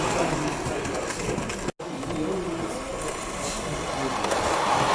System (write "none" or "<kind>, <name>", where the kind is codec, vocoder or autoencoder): none